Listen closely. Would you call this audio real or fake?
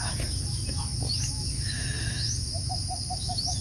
fake